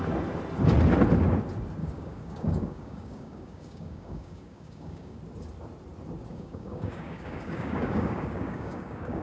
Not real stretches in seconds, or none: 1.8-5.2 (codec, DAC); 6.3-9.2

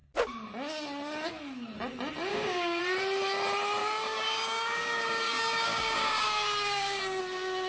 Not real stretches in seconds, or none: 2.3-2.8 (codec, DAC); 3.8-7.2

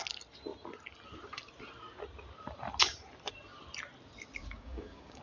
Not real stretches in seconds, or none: 4.4-5.2 (codec, DAC)